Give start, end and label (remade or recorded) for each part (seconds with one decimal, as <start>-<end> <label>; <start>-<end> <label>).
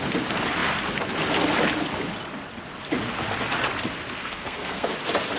0.0-4.2 recorded; 4.2-4.9 remade; 4.9-5.4 recorded